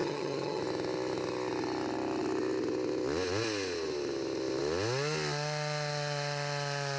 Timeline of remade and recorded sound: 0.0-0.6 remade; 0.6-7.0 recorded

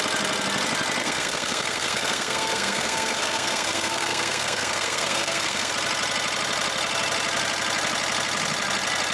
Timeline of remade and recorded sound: 0.0-1.0 recorded; 1.0-5.7 remade; 5.7-9.1 recorded